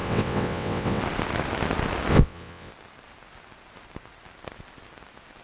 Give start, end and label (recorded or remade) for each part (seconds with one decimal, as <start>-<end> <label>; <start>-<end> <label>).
0.0-1.0 remade; 1.0-2.1 recorded; 2.1-2.7 remade; 2.7-5.4 recorded